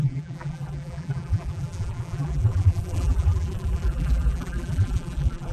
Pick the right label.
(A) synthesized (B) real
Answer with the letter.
A